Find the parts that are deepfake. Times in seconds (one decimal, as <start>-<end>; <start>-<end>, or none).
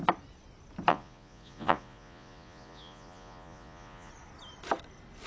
0.9-4.1